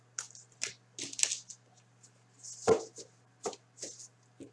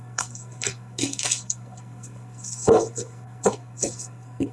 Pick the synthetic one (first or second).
second